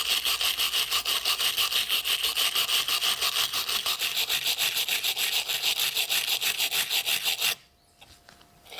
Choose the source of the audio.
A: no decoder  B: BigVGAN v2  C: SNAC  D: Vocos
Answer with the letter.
A